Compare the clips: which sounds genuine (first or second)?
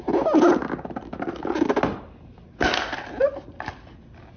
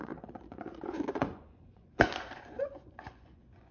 first